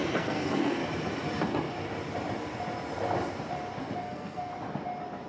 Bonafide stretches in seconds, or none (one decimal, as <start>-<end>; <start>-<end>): 0.8-4.0; 4.5-5.3